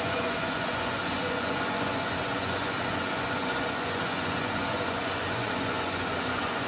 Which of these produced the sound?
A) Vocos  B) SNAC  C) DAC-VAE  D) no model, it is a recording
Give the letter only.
A